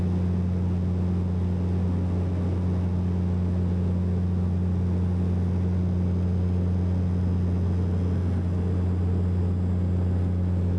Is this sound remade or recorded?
recorded